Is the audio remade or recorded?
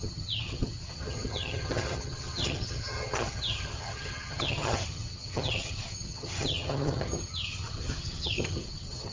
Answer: remade